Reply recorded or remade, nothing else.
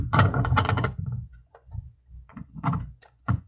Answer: remade